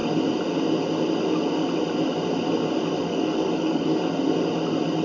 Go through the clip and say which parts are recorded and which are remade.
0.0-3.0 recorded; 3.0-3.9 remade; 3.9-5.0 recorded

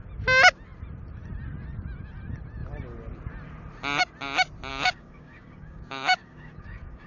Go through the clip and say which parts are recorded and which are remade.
0.0-4.7 recorded; 4.7-7.1 remade

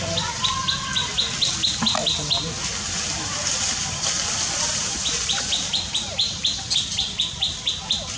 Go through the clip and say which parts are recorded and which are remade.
0.0-8.2 recorded

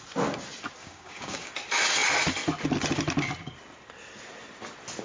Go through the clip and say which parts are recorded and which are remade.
0.0-0.8 recorded; 0.8-1.5 remade; 1.5-5.0 recorded